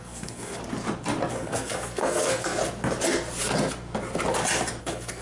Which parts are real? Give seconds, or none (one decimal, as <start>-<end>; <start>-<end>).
0.6-1.3; 2.6-4.8